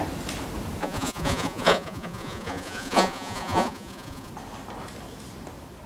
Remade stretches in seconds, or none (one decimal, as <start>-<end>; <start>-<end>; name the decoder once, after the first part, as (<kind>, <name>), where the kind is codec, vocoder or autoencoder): 0.8-4.3 (vocoder, Vocos)